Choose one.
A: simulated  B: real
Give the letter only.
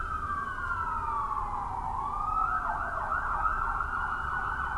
B